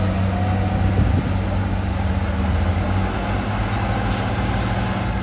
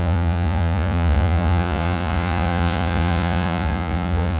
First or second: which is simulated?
second